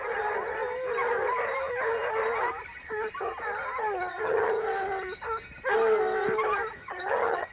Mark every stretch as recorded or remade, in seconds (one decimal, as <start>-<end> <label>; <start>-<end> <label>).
0.0-4.1 recorded; 4.1-4.6 remade; 4.6-6.8 recorded; 6.8-7.5 remade